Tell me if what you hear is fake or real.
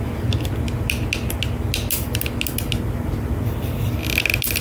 real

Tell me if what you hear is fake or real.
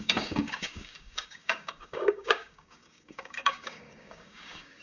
fake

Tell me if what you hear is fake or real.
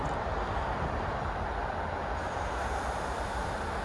real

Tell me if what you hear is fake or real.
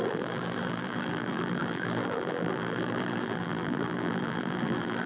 fake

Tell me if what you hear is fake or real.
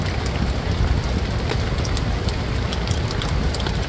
real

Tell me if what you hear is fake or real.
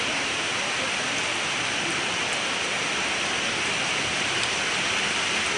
real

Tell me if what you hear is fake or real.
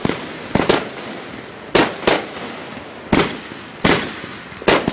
real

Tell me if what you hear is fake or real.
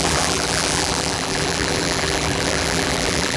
fake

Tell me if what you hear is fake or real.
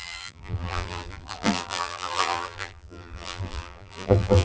fake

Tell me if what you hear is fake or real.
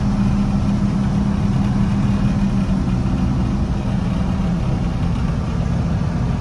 real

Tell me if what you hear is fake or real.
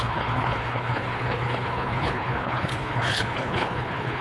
fake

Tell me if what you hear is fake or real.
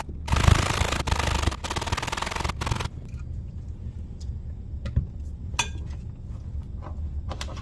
fake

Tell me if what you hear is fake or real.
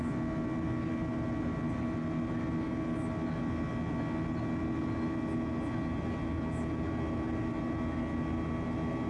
real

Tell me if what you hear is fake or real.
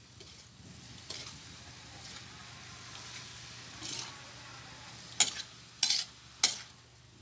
real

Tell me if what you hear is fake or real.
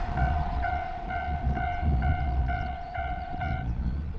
fake